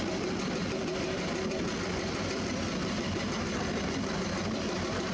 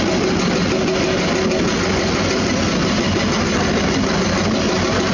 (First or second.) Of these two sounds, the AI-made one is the first